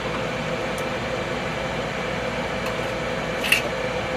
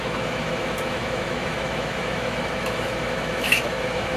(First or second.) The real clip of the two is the first